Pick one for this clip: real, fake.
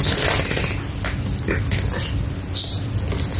real